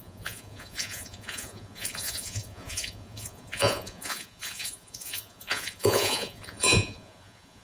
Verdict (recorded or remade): remade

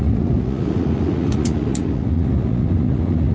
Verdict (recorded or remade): remade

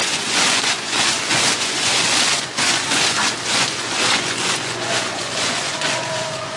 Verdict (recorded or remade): remade